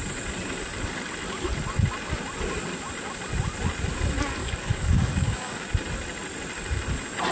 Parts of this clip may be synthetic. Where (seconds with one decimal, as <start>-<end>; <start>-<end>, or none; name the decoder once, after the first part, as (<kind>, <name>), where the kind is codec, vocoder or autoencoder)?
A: 4.4-5.6 (codec, DAC)